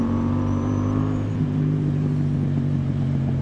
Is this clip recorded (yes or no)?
no